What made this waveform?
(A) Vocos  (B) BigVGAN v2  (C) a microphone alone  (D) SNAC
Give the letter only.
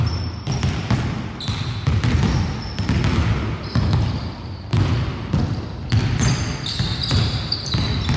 C